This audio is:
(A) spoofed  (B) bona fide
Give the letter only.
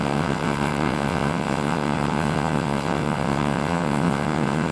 A